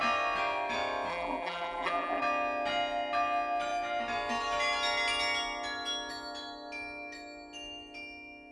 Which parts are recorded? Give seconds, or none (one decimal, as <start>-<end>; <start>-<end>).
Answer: 0.0-1.1; 2.2-8.5